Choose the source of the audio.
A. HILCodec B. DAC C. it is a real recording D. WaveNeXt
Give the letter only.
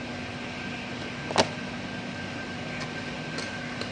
C